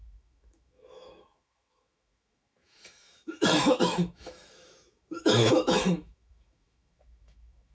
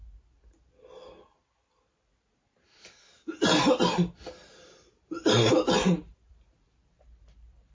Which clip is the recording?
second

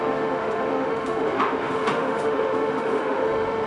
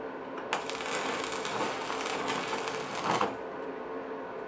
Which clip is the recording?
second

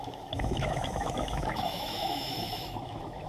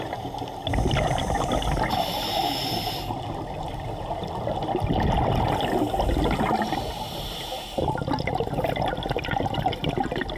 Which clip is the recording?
second